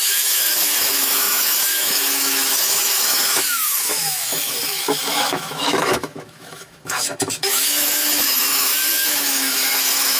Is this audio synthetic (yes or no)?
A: yes